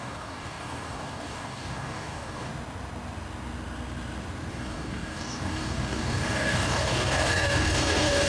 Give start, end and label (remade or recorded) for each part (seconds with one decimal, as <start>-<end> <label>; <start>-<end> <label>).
0.0-2.5 remade; 2.5-4.5 recorded; 4.5-8.3 remade